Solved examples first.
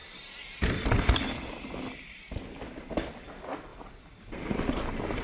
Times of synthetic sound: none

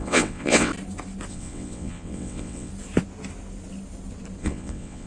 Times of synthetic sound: 0.0-0.7 (vocoder, WaveNeXt); 1.3-2.7; 4.4-5.1

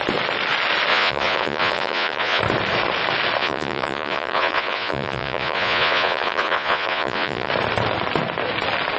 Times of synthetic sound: 0.9-2.4 (vocoder, Vocos); 3.4-7.5

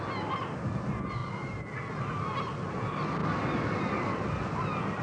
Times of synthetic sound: none

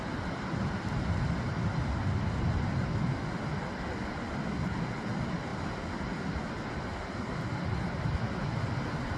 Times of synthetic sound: none